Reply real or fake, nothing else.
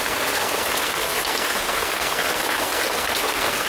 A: fake